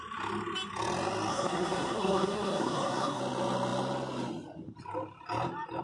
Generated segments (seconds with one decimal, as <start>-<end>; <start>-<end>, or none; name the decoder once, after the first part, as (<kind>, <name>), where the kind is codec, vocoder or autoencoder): 1.3-3.2 (codec, SNAC)